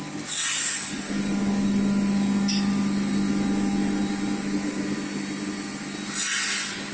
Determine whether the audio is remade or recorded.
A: recorded